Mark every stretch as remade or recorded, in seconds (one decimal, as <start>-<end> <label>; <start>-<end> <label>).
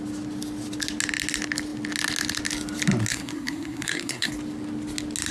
0.0-3.1 recorded; 3.1-4.3 remade; 4.3-5.3 recorded